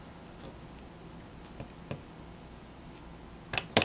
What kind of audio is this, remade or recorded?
recorded